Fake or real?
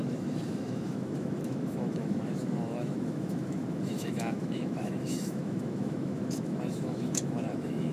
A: fake